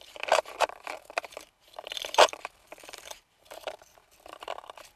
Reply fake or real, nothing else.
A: fake